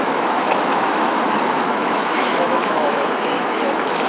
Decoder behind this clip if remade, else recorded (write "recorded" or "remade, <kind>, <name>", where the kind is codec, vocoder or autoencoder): remade, autoencoder, DAC-VAE